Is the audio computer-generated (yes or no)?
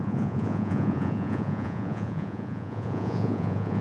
yes